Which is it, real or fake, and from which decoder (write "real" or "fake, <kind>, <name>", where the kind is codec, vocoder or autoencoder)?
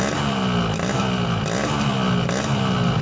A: real